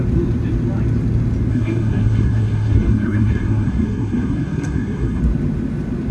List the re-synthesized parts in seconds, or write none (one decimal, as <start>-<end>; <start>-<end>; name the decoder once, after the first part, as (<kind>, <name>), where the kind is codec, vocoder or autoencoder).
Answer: 1.5-5.2 (codec, SNAC)